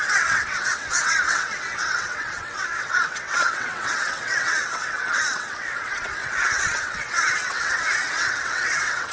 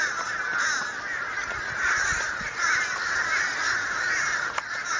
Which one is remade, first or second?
first